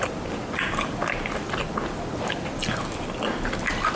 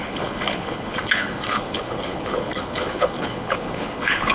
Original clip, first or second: first